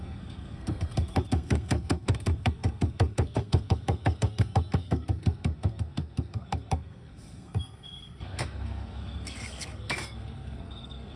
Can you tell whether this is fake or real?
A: fake